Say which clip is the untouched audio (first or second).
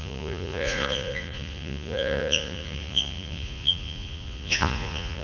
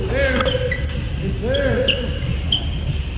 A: second